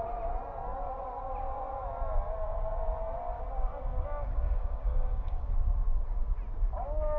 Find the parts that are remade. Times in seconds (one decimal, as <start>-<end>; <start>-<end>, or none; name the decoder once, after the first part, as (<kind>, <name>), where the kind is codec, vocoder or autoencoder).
3.9-5.5 (codec, DAC)